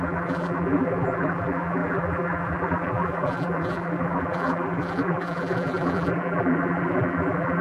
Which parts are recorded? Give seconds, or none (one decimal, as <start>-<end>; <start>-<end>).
none